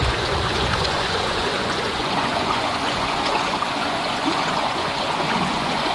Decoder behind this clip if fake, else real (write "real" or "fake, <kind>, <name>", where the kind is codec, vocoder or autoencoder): fake, vocoder, Vocos